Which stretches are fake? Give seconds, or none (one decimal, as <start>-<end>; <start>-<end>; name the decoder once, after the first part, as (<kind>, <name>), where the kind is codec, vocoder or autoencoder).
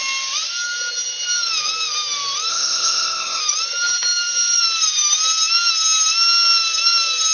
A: 2.5-3.4 (codec, ZipCodec)